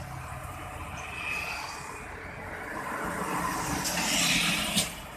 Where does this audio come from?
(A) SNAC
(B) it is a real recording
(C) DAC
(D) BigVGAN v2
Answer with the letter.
B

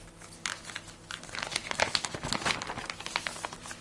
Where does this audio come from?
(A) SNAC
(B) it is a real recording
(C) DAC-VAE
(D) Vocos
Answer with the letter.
B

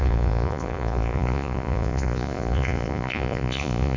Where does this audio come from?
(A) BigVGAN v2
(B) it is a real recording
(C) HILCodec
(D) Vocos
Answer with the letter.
D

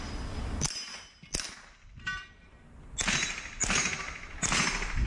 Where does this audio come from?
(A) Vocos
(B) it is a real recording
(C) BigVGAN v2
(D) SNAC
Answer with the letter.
B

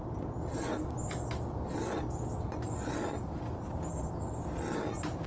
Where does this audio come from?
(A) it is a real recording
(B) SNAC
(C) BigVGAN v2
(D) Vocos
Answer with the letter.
A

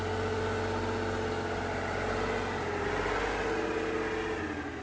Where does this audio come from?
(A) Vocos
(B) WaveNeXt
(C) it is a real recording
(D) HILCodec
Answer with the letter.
C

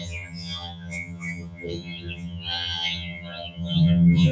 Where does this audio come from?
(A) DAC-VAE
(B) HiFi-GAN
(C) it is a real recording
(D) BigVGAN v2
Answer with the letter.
B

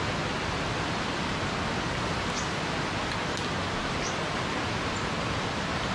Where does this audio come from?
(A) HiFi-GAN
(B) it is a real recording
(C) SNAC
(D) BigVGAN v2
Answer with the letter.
B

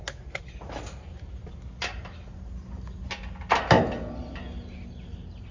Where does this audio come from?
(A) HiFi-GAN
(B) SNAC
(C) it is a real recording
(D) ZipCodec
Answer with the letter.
C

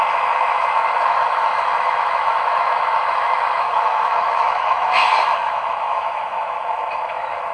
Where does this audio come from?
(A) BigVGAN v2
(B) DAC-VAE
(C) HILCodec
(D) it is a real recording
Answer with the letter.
B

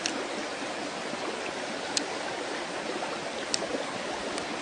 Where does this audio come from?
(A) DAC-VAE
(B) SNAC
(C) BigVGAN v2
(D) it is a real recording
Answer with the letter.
D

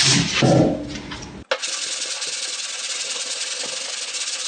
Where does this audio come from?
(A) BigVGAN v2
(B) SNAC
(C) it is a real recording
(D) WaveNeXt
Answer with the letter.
C